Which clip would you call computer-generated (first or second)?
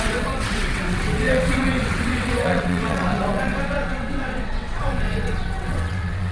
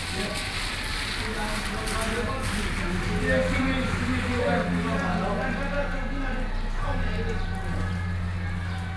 first